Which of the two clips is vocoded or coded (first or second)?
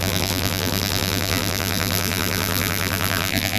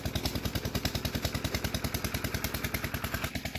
first